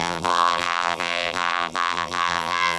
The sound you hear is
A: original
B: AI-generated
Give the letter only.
B